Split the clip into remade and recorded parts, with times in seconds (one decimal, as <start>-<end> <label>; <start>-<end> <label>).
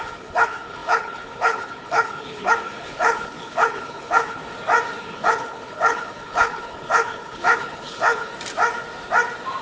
0.0-4.4 remade; 4.4-5.0 recorded; 5.0-8.3 remade; 8.3-9.6 recorded